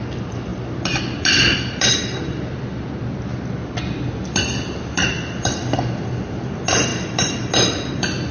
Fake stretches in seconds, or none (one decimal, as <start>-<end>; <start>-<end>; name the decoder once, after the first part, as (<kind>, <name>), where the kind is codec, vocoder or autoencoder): none